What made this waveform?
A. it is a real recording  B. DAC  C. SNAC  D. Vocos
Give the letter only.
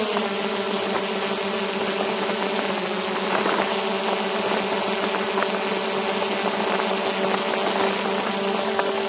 A